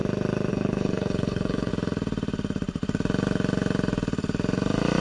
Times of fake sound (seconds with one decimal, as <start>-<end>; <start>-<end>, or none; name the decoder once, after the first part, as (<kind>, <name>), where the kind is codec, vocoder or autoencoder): 0.5-1.7 (codec, HILCodec)